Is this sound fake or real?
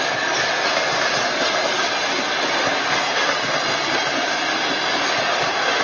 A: real